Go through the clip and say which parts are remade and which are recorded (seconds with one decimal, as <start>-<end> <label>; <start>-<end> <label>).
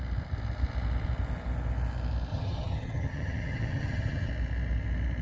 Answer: 0.0-2.3 recorded; 2.3-4.3 remade; 4.3-5.2 recorded